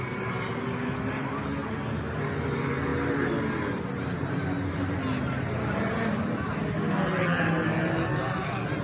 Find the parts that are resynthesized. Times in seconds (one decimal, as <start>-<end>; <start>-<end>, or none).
none